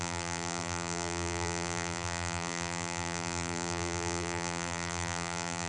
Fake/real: fake